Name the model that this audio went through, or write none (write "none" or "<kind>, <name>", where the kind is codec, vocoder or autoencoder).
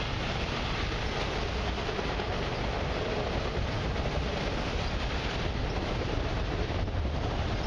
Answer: none